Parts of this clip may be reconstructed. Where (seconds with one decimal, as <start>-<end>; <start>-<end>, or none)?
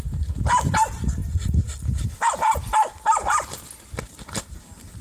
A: none